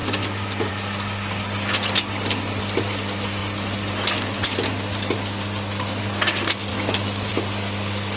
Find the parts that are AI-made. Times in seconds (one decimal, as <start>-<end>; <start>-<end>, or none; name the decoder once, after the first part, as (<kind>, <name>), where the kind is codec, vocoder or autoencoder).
6.7-7.3 (autoencoder, DAC-VAE)